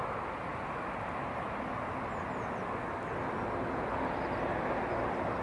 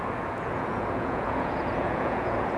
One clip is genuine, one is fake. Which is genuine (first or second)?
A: first